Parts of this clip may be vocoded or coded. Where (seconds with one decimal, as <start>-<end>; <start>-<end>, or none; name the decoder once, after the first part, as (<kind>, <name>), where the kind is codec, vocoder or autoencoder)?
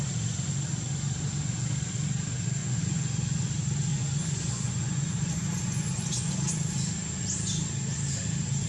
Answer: 2.6-3.5 (vocoder, Vocos); 3.9-6.3